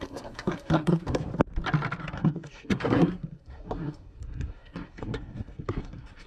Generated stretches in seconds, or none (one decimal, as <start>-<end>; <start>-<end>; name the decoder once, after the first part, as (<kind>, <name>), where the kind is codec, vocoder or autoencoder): 0.0-1.3 (codec, SNAC); 2.0-6.3